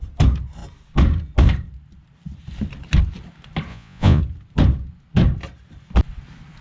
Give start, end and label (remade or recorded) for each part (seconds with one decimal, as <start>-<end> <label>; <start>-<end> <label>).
0.0-3.7 recorded; 3.7-4.2 remade; 4.2-6.6 recorded